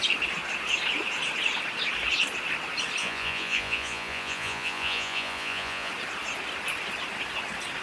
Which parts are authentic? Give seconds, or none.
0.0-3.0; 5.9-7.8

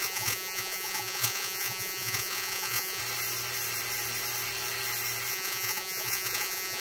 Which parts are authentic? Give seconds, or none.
3.0-5.3

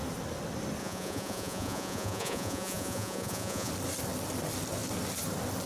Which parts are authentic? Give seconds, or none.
0.0-0.8; 3.7-5.7

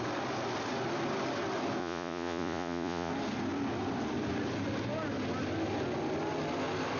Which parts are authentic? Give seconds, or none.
0.0-1.8; 3.1-7.0

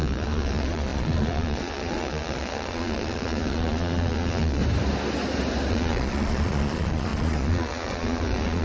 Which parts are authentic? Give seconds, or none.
4.6-5.7

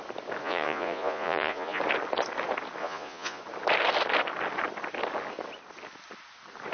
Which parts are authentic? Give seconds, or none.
0.0-0.4; 1.8-2.8; 3.4-6.7

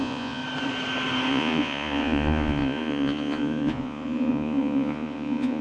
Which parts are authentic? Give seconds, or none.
0.4-1.3